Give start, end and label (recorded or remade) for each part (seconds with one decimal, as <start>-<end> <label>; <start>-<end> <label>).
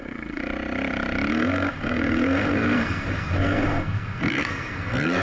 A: 0.0-0.4 remade; 0.4-1.3 recorded; 1.3-5.2 remade